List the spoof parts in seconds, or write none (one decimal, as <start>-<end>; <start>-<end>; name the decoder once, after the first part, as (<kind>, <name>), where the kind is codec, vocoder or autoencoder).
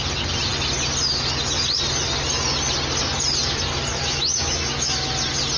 3.9-5.1 (autoencoder, DAC-VAE)